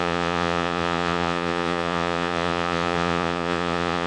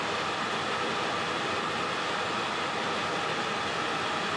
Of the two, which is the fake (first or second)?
first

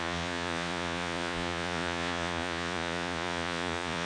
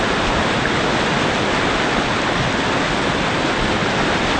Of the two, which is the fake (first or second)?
first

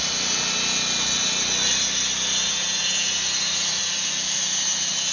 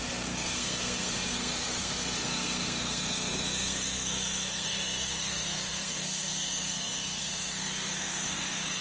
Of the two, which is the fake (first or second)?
second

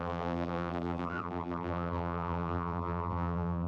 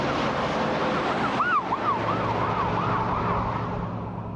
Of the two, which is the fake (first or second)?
first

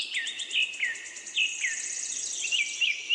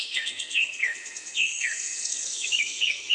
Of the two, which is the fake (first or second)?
second